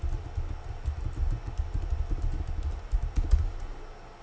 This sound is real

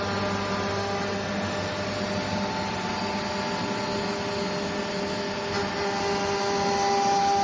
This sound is real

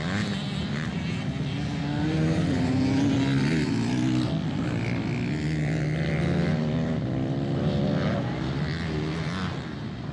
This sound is real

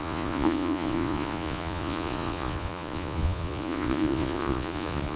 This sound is fake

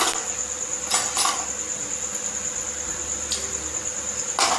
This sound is real